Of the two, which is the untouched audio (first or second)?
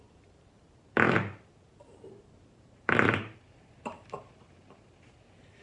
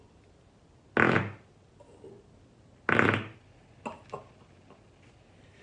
second